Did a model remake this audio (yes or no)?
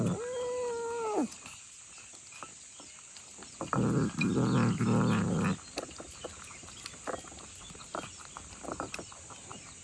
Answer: no